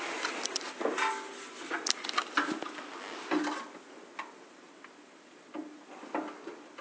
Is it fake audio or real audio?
real